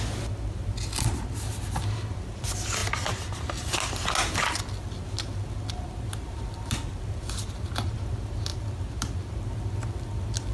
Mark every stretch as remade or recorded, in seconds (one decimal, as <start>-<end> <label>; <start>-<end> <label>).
0.0-10.5 recorded